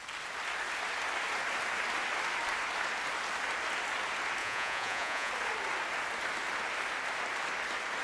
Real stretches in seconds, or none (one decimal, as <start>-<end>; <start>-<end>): 0.0-4.4; 5.3-8.0